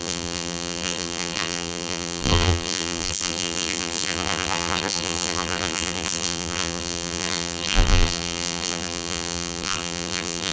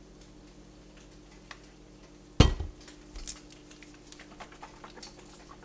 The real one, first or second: second